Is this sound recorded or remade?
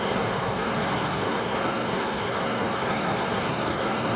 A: remade